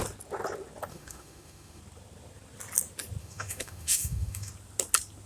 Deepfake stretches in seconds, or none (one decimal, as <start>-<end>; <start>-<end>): 0.9-1.8; 3.2-4.5